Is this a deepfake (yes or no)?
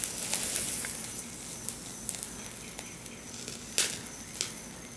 no